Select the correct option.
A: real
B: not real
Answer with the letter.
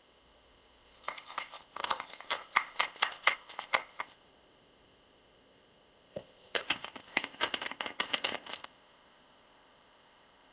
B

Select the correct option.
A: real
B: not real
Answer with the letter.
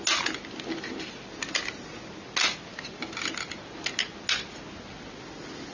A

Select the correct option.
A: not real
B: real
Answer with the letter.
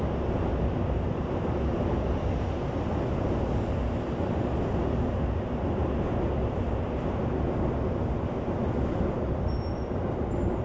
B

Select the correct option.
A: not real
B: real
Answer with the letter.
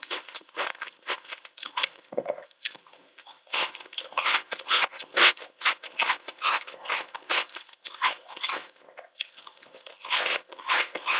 A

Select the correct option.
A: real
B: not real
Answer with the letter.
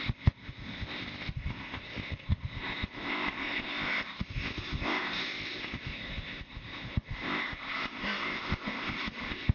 B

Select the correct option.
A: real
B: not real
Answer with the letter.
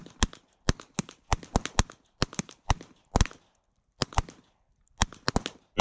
A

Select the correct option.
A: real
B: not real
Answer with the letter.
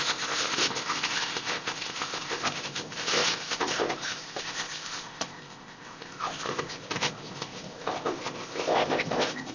B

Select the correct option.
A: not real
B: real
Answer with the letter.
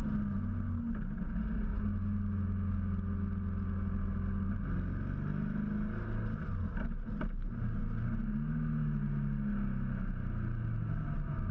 B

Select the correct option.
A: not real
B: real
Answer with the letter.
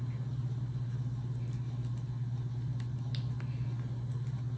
B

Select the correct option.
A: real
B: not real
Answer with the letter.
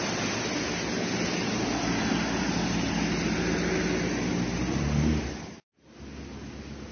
A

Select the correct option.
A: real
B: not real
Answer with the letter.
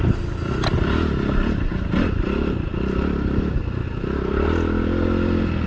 A